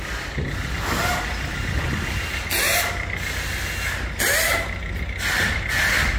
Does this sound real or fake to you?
real